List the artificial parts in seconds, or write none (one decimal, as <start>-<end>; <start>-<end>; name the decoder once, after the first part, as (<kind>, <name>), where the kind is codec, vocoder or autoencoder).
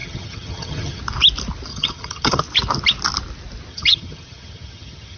0.0-1.0 (vocoder, HiFi-GAN); 1.7-2.4; 3.7-5.2